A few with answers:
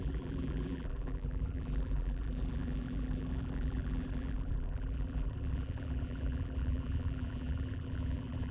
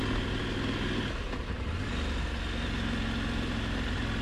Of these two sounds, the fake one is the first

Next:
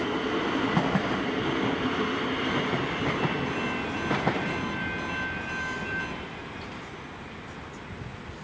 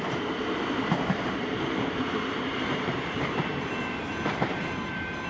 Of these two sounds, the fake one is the second